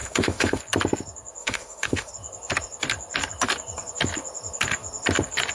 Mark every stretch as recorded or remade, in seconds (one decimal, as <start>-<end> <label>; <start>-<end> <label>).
0.0-0.6 remade; 0.6-1.4 recorded; 1.4-2.1 remade; 2.1-5.5 recorded